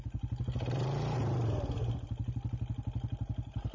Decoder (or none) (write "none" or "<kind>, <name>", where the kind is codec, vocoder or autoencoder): none